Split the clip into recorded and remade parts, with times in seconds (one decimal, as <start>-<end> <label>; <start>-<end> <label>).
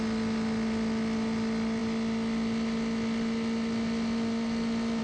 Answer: 0.0-5.0 recorded